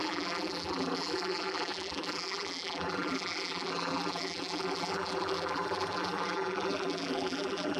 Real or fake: fake